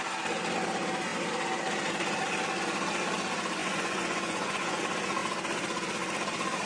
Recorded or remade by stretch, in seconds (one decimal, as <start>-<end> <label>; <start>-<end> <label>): 0.0-3.6 recorded; 3.6-4.8 remade; 4.8-6.7 recorded